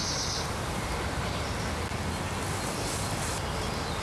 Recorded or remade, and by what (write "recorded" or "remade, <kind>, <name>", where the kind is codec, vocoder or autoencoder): recorded